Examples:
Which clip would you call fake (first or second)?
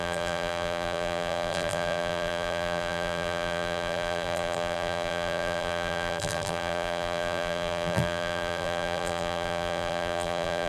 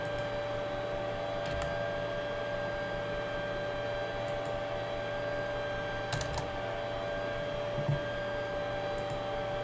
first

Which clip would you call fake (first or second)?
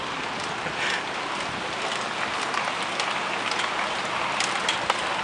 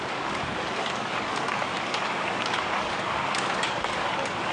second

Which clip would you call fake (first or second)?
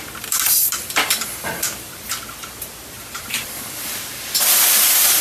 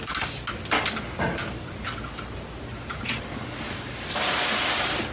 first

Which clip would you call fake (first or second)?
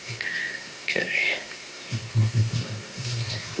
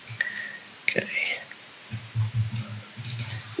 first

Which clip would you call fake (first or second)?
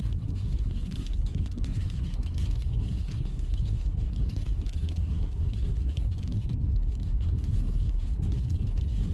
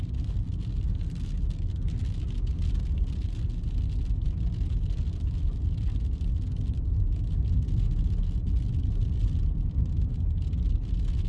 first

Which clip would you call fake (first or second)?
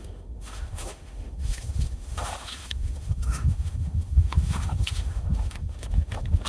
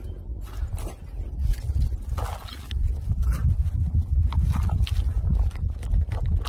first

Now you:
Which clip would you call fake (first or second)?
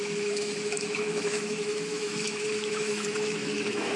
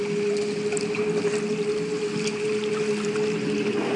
first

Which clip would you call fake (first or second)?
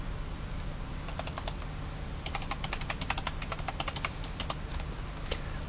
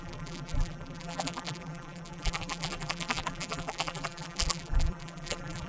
second